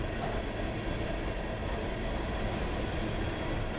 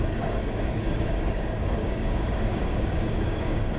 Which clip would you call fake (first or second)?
second